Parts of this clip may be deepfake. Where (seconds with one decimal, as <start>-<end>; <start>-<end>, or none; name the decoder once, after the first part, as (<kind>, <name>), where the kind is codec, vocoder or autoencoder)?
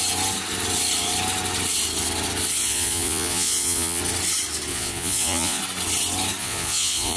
2.6-4.0 (vocoder, Vocos); 4.7-5.6; 6.4-7.2